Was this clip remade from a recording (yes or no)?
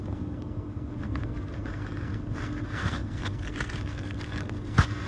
yes